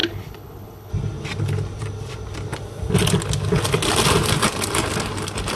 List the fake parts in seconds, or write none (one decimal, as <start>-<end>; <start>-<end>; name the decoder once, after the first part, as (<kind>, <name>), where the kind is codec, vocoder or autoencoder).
0.0-0.9 (codec, HILCodec)

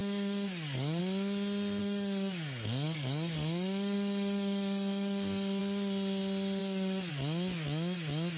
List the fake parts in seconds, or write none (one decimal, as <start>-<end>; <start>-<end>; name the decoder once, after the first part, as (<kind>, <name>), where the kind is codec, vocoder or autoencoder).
0.0-1.0 (codec, DAC); 1.8-5.6; 6.6-7.1

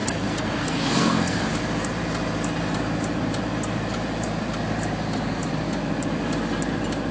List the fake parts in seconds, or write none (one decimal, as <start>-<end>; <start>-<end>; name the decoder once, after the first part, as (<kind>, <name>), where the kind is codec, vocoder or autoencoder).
0.0-1.5 (codec, SNAC)

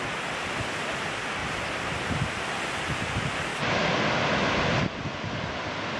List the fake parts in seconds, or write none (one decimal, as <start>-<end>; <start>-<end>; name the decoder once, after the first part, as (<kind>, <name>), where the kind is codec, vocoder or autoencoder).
none

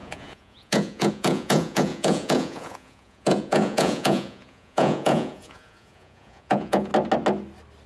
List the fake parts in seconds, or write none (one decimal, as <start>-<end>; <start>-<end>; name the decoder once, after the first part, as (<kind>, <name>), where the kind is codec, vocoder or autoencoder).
0.0-6.9 (vocoder, Vocos)

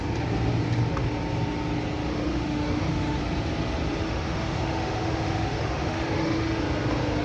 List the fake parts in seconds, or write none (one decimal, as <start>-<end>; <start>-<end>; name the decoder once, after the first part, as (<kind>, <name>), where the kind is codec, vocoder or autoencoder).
2.1-3.2 (autoencoder, DAC-VAE); 4.0-6.6

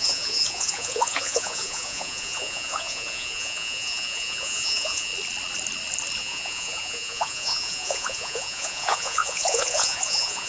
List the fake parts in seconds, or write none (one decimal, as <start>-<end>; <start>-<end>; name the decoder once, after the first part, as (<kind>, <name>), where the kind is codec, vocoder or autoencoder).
0.0-5.1 (vocoder, Vocos); 6.2-10.5

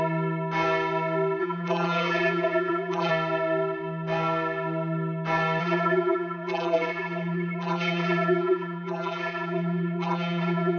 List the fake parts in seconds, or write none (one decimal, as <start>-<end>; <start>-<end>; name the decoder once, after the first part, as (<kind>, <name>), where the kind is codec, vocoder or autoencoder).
1.4-3.1 (vocoder, BigVGAN v2); 5.6-10.8